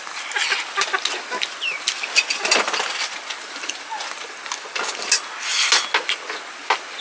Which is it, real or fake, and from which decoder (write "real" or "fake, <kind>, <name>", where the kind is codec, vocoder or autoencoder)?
real